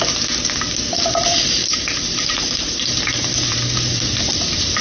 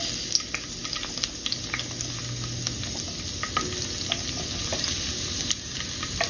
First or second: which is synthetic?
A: first